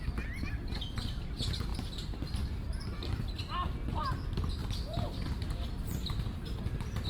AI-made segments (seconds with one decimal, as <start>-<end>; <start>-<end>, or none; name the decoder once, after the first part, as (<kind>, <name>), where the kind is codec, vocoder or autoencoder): 1.7-3.1 (vocoder, BigVGAN v2); 4.6-6.6